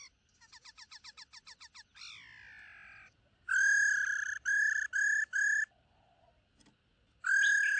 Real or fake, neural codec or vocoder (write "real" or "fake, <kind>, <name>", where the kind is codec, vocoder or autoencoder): real